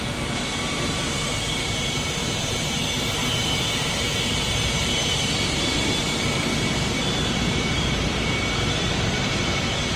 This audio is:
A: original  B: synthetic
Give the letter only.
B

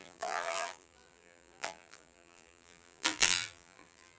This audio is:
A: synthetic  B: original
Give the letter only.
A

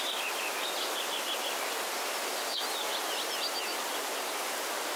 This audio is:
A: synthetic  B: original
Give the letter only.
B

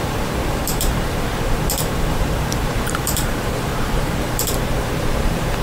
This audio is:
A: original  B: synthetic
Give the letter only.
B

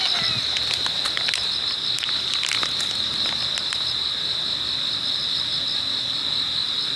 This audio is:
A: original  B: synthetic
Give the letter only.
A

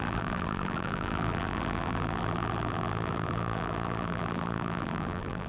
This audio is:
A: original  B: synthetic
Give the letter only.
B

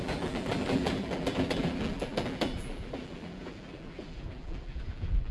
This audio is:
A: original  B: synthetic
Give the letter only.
B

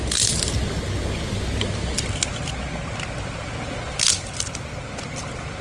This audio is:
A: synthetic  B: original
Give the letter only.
B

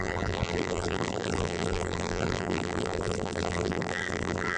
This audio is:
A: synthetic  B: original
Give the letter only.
A